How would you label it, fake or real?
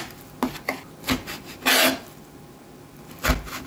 real